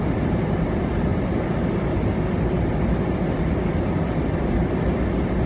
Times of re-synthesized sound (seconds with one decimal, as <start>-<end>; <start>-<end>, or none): none

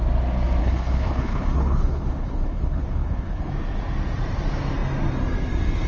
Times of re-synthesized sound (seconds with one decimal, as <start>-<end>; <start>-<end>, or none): 0.6-3.5

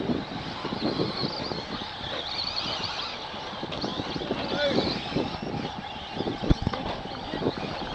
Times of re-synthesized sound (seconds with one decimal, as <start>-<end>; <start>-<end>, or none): none

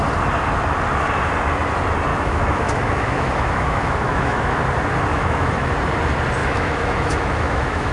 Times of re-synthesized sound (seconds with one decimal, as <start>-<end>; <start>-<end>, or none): 2.1-4.6; 5.1-5.7; 6.4-7.9

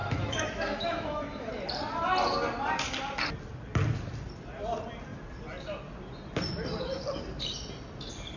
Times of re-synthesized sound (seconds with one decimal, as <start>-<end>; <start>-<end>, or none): 0.0-1.5

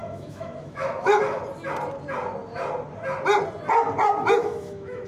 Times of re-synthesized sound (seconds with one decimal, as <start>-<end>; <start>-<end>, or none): 0.0-1.4; 4.4-5.1